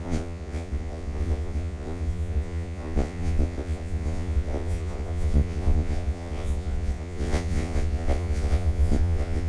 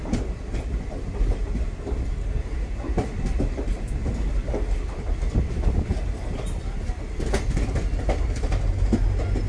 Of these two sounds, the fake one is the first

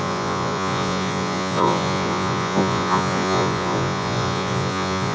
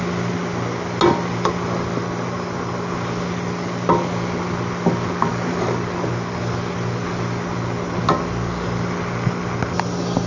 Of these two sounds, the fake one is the first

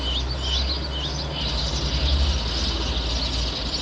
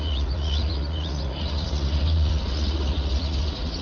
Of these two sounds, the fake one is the second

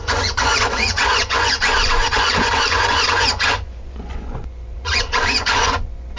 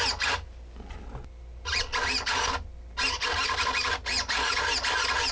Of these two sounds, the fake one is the first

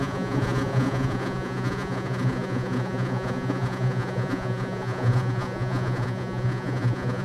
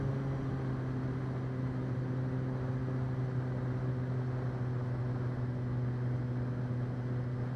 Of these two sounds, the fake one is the first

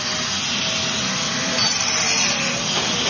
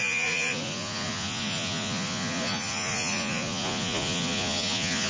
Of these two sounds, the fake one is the second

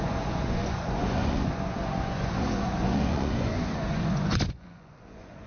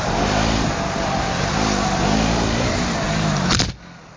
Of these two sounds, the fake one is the first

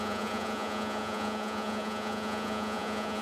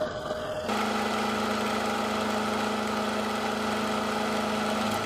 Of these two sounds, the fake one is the first